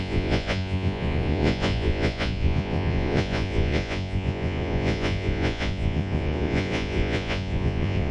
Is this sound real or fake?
fake